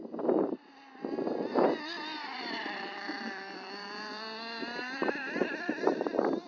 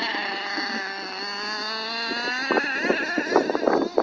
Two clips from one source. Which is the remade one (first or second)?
first